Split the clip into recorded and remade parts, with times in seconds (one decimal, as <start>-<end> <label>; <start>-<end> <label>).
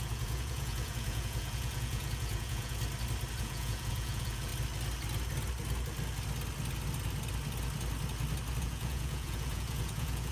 0.0-2.8 remade; 2.8-3.4 recorded; 3.4-4.5 remade; 4.5-8.6 recorded; 8.6-10.3 remade